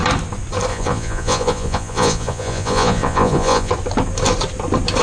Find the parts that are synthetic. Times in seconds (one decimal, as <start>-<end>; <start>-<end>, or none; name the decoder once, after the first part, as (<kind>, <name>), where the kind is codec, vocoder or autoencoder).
0.7-3.7 (vocoder, Vocos)